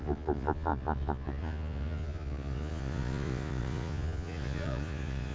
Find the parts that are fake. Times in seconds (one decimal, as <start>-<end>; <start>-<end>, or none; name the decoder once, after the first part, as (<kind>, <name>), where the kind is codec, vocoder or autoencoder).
0.0-5.3 (vocoder, Vocos)